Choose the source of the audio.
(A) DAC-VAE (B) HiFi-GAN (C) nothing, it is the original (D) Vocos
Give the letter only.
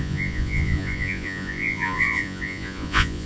D